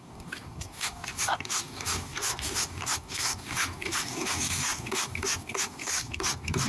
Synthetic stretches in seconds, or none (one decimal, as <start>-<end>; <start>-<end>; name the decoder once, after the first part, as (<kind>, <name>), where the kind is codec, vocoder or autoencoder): 0.0-6.7 (codec, DAC)